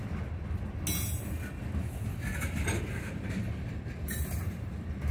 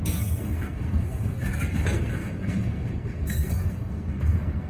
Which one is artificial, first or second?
second